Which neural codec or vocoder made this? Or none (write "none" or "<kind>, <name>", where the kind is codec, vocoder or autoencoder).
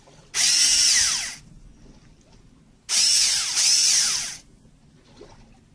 none